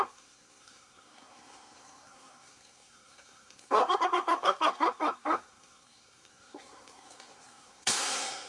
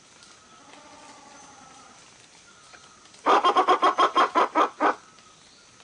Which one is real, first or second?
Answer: second